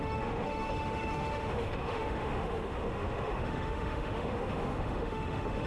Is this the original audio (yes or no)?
no